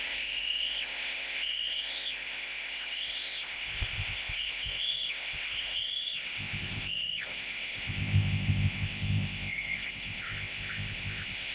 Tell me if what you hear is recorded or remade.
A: remade